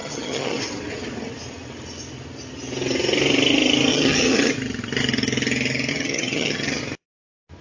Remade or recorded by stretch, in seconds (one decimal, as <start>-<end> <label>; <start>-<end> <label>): 0.0-0.6 remade; 0.6-3.9 recorded; 3.9-4.5 remade; 4.5-5.9 recorded; 5.9-6.8 remade; 6.8-7.6 recorded